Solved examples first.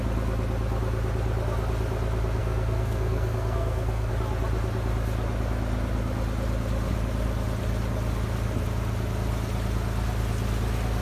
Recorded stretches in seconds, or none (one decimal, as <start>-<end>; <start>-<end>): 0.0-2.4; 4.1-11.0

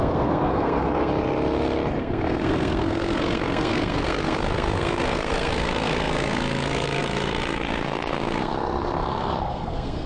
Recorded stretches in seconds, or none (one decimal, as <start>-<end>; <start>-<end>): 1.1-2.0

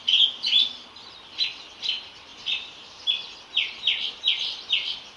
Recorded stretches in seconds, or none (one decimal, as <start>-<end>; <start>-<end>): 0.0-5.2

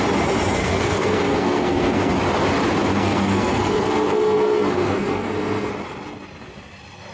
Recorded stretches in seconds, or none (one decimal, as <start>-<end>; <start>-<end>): 0.0-0.6; 2.1-2.9; 5.7-7.1

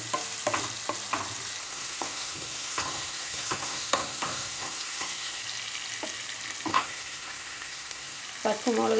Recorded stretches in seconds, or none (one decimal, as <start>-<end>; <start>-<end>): 0.0-1.6; 5.4-6.7; 8.2-9.0

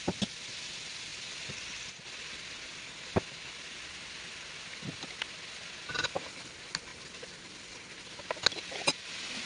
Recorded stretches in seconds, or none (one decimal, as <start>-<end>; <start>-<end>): 0.0-9.5

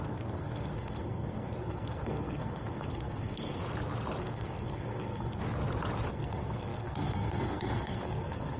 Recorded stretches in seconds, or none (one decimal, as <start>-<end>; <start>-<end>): 3.6-4.2; 5.4-6.1